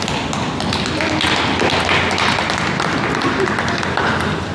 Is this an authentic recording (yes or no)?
yes